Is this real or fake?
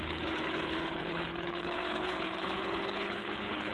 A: fake